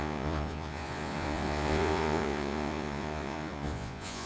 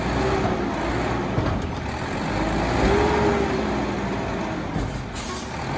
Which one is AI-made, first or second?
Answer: first